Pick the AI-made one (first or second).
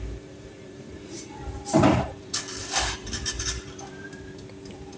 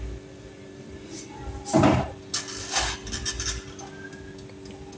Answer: first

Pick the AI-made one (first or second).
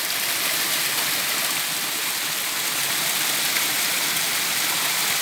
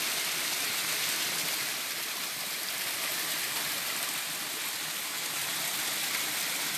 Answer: first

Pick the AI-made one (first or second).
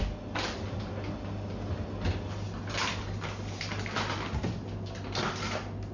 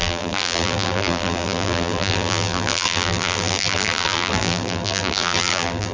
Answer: second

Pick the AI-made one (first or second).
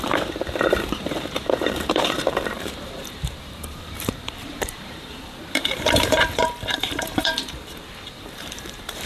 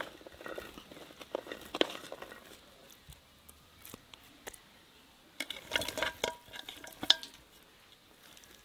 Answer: first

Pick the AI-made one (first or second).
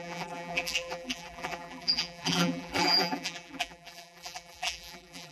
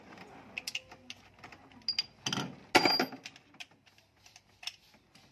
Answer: first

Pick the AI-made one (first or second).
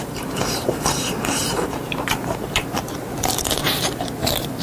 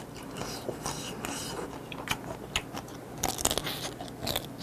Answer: first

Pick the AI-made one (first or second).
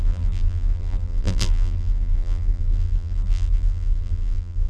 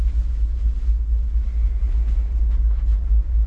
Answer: first